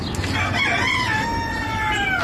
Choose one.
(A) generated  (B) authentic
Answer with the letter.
B